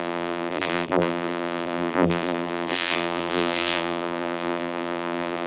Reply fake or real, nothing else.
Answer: fake